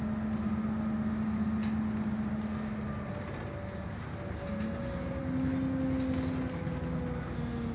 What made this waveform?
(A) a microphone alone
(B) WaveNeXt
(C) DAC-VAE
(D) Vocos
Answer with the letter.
A